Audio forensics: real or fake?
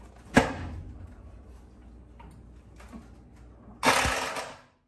real